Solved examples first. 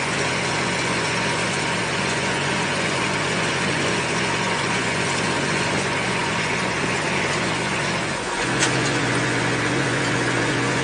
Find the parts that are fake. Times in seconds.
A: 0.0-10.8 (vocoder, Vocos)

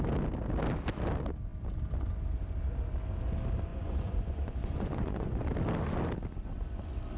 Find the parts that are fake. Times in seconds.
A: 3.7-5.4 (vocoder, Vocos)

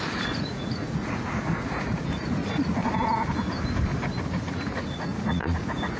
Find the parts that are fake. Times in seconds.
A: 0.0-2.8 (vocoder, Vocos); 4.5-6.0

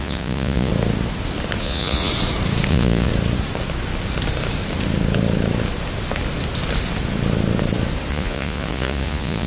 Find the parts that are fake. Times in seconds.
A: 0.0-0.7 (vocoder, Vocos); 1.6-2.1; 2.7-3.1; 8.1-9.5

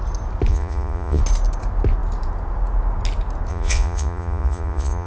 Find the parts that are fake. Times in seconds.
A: 0.5-1.2 (vocoder, Vocos); 3.5-5.1

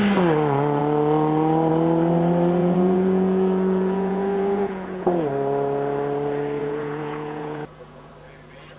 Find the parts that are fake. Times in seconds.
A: 2.6-5.3 (vocoder, Vocos); 6.6-8.1